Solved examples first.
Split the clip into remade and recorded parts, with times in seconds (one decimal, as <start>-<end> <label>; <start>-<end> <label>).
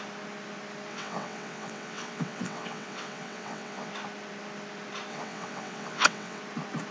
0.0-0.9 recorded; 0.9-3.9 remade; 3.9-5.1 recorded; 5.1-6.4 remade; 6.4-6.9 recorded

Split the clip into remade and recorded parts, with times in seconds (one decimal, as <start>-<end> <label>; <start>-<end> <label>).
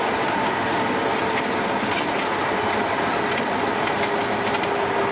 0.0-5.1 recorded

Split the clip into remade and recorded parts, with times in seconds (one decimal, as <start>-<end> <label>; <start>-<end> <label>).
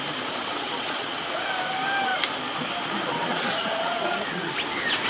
0.0-0.5 recorded; 0.5-1.3 remade; 1.3-3.1 recorded; 3.1-4.5 remade; 4.5-5.1 recorded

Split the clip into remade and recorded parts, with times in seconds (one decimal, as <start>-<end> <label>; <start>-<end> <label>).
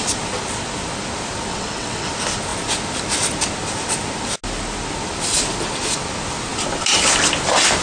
0.0-1.5 recorded; 1.5-2.1 remade; 2.1-7.8 recorded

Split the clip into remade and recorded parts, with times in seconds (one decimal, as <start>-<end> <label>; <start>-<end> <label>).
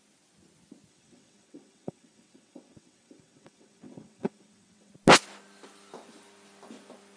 0.0-0.9 recorded; 0.9-4.9 remade; 4.9-7.2 recorded